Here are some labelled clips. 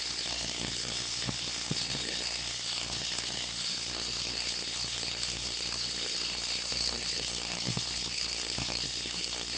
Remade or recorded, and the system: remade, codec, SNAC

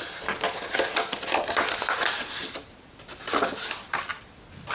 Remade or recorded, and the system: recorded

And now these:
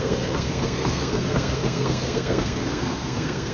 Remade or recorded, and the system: remade, codec, SNAC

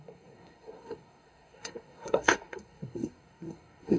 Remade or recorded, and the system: remade, codec, SNAC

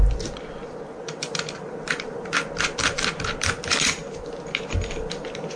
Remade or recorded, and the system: recorded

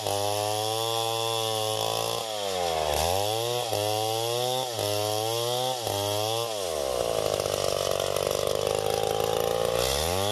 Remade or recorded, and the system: recorded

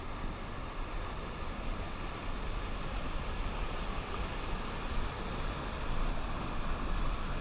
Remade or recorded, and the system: recorded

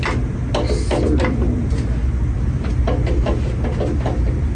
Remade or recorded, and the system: recorded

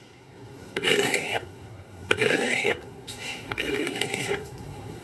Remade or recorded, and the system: remade, codec, SNAC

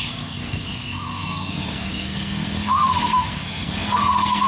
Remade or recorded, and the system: remade, codec, SNAC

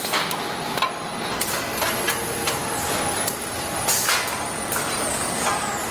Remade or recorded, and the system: recorded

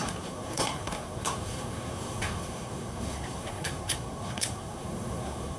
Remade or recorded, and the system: remade, codec, SNAC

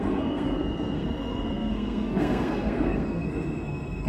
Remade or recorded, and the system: remade, codec, SNAC